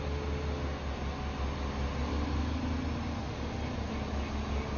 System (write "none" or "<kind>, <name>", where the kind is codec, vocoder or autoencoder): none